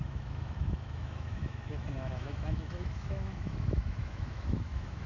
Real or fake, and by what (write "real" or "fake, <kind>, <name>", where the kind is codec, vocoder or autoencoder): fake, autoencoder, DAC-VAE